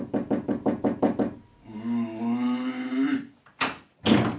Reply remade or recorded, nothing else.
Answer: recorded